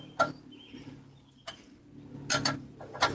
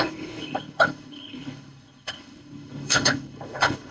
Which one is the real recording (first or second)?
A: first